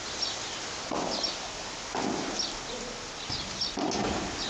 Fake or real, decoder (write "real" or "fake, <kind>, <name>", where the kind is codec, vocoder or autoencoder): real